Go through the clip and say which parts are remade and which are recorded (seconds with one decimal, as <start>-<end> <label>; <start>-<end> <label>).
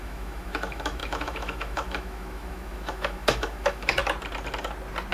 0.0-4.0 remade; 4.0-5.1 recorded